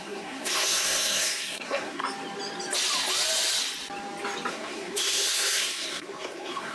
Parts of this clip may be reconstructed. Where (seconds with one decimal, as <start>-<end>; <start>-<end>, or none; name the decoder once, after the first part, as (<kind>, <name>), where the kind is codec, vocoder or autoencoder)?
0.0-2.0 (codec, SNAC); 4.5-6.7